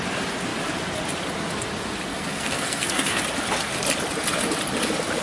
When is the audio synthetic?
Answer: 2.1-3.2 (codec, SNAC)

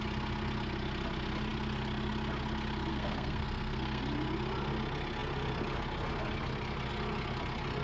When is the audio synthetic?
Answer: 2.9-4.0 (codec, SNAC)